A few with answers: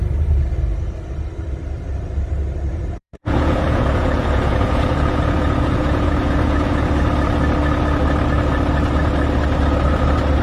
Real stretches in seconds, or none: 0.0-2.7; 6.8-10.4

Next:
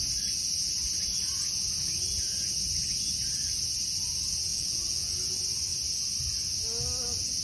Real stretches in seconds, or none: 0.0-4.5; 5.1-7.4

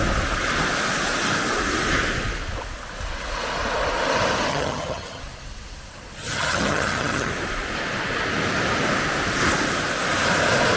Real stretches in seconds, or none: 0.0-4.5; 5.2-6.2; 7.3-10.8

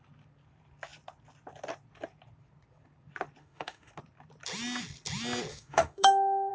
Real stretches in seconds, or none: 0.0-3.4; 3.9-5.5

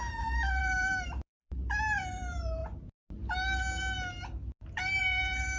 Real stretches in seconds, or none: 2.6-5.0

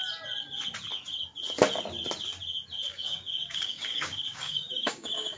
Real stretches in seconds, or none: 0.0-2.9

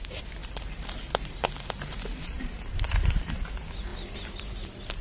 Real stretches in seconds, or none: 0.0-0.4; 3.4-3.9

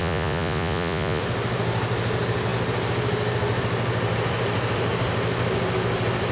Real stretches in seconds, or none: 1.2-6.3